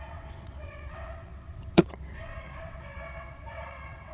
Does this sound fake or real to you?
fake